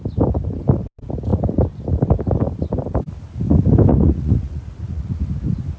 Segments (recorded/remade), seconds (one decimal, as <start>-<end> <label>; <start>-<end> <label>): 0.0-3.9 recorded; 3.9-5.2 remade; 5.2-5.8 recorded